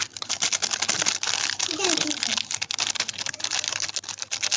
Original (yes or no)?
yes